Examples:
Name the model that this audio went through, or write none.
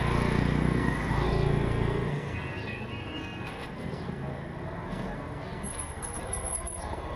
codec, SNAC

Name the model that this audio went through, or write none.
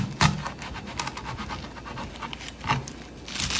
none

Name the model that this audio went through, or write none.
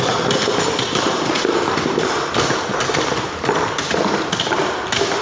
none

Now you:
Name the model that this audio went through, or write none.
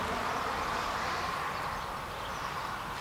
none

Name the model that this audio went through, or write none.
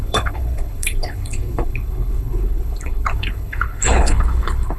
codec, HILCodec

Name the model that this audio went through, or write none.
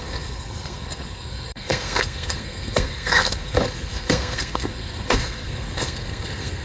codec, SNAC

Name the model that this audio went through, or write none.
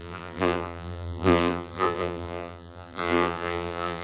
vocoder, BigVGAN v2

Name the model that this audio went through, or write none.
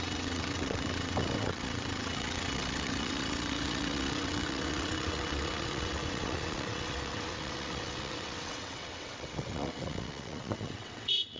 vocoder, WaveNeXt